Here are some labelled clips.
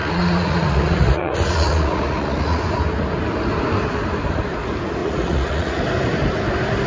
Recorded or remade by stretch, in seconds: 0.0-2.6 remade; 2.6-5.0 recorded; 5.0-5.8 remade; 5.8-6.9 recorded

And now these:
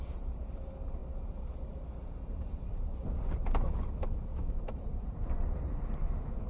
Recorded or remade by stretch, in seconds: 0.0-1.0 remade; 1.0-2.3 recorded; 2.3-2.9 remade; 2.9-4.5 recorded; 4.5-6.5 remade

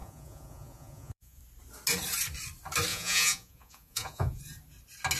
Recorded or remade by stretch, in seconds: 0.0-1.4 remade; 1.4-2.9 recorded; 2.9-4.4 remade; 4.4-5.2 recorded

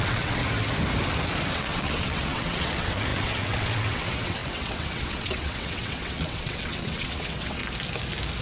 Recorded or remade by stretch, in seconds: 0.0-0.4 remade; 0.4-1.5 recorded; 1.5-7.6 remade; 7.6-8.4 recorded

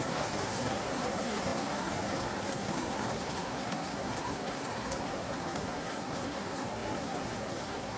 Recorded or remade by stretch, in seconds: 0.0-8.0 remade